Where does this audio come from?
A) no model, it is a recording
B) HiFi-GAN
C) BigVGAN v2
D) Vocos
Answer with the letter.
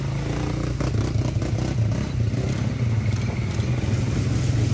A